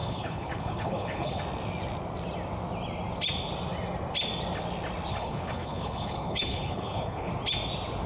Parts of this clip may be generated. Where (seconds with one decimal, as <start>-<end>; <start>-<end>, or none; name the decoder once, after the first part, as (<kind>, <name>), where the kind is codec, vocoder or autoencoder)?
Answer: 0.0-1.4 (codec, HILCodec); 5.1-7.3